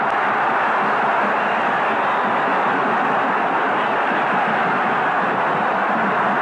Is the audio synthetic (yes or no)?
no